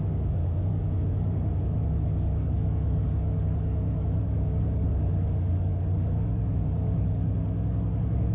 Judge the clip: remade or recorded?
remade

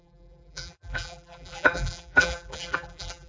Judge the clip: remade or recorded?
remade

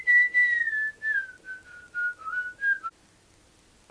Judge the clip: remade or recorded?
recorded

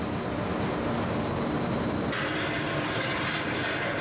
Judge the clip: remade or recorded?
recorded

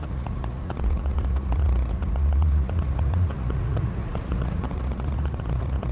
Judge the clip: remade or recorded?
remade